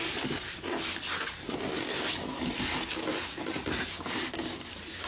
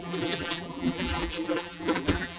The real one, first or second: first